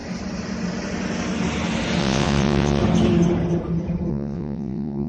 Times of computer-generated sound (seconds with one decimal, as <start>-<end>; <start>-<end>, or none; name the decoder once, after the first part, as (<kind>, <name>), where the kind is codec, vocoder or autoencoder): 2.0-2.8 (vocoder, WaveNeXt); 4.1-5.1